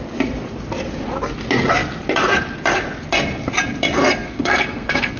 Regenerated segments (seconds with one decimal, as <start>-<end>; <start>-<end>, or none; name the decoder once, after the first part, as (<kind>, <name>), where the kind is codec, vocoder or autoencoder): 4.0-5.2 (codec, SNAC)